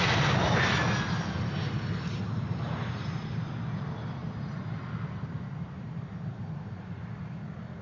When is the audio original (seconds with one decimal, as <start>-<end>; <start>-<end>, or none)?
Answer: 0.0-7.8